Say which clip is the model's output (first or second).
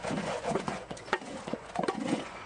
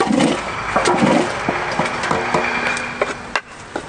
first